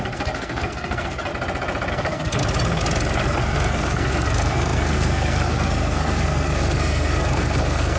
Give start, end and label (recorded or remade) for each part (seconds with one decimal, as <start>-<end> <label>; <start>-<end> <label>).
0.0-1.3 remade; 1.3-1.9 recorded; 1.9-2.4 remade; 2.4-3.2 recorded; 3.2-8.0 remade